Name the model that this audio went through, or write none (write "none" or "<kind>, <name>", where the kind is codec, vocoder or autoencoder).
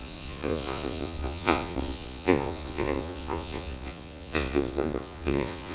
vocoder, Vocos